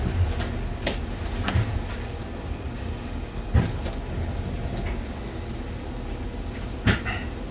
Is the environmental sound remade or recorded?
recorded